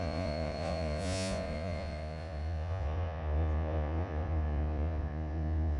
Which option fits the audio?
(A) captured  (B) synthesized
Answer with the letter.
B